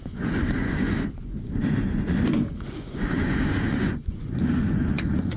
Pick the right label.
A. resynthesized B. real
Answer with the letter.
A